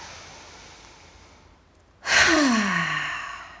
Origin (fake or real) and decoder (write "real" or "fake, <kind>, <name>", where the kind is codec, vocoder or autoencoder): real